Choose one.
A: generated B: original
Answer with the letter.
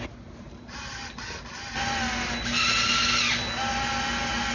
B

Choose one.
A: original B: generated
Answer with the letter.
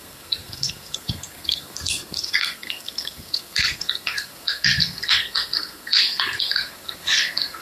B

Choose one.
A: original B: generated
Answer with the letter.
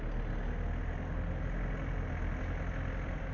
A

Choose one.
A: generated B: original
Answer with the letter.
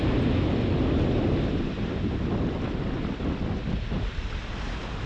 B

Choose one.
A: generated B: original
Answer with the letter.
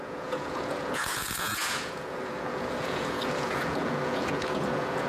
A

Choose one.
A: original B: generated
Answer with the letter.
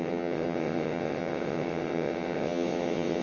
B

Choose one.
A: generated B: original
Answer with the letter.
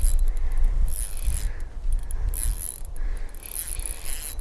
B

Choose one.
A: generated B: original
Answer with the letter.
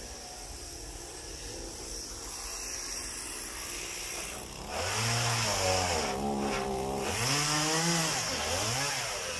B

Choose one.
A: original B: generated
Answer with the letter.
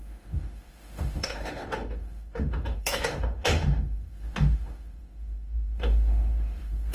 B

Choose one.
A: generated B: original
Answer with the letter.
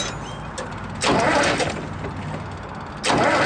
B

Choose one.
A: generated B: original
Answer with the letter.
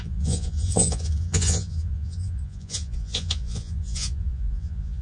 A